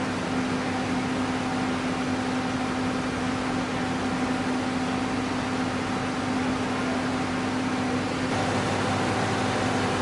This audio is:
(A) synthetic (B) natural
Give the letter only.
B